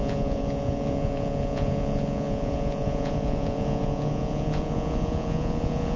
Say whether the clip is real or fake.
fake